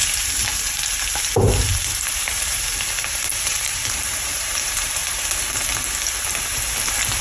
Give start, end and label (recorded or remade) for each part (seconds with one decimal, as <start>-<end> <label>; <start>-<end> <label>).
0.0-5.0 remade; 5.0-7.2 recorded